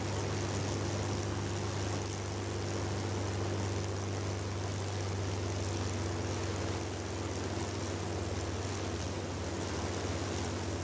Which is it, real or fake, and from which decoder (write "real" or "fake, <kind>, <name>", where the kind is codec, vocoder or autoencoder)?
real